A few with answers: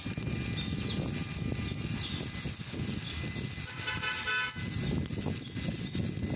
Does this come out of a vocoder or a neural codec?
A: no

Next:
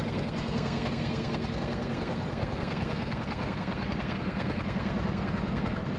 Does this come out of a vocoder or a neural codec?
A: yes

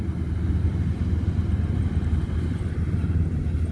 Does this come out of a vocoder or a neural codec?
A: no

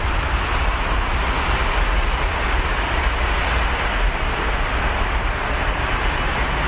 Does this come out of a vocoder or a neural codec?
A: no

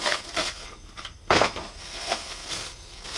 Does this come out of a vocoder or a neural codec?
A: yes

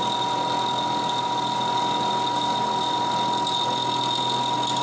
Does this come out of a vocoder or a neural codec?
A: no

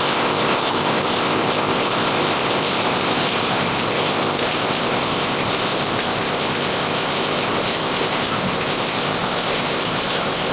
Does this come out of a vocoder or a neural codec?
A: yes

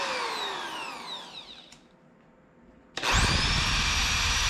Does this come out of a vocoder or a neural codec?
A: no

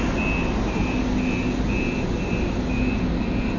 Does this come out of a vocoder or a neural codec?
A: no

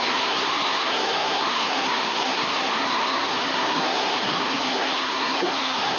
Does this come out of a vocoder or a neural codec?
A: yes